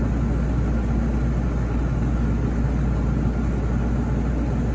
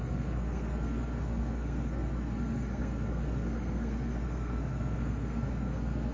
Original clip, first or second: first